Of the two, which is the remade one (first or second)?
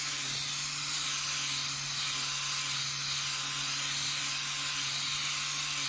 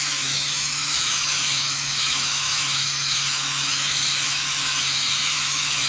second